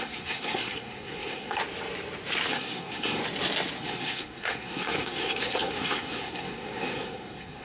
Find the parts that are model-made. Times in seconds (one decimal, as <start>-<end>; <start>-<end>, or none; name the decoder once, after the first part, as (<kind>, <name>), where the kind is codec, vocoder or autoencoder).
0.0-1.6 (codec, SNAC); 2.5-3.2; 3.8-7.6